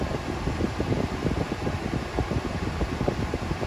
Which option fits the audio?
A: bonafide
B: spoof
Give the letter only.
B